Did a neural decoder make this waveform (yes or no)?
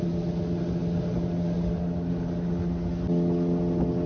no